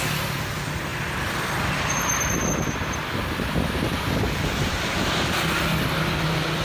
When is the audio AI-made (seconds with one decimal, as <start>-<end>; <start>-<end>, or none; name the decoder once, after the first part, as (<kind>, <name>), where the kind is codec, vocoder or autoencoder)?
0.9-4.9 (vocoder, BigVGAN v2)

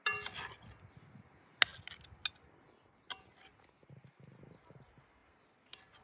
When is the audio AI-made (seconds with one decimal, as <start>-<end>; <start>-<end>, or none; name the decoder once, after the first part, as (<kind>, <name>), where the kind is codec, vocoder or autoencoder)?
none

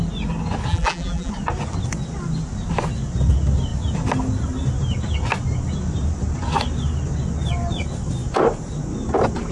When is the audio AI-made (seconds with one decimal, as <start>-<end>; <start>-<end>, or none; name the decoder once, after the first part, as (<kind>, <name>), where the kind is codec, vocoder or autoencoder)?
0.7-1.3 (vocoder, BigVGAN v2)

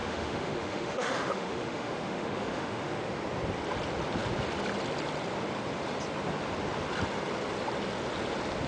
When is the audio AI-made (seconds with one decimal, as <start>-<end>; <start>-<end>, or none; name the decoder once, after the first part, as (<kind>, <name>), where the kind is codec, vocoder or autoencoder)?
0.0-3.0 (autoencoder, DAC-VAE)

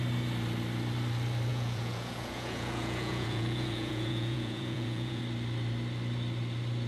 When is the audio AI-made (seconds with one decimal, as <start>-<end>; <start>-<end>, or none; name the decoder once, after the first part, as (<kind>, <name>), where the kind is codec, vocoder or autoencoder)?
1.5-5.2 (vocoder, Vocos)